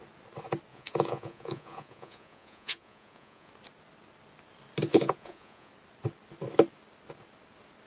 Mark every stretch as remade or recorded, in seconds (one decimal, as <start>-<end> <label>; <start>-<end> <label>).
0.0-0.7 recorded; 0.7-3.5 remade; 3.5-4.9 recorded; 4.9-5.7 remade; 5.7-7.9 recorded